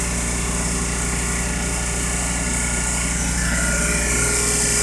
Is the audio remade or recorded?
recorded